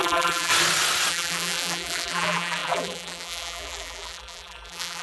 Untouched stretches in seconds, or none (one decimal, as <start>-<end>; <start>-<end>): 0.5-1.1